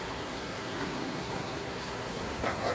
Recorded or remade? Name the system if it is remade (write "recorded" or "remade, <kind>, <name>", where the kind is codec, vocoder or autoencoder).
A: remade, codec, SNAC